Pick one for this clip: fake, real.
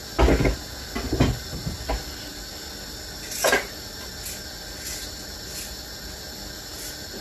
real